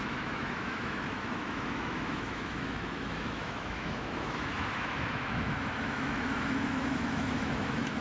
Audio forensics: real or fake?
fake